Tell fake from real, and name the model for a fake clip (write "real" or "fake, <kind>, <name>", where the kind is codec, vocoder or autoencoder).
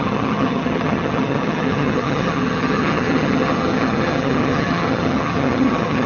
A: fake, vocoder, HiFi-GAN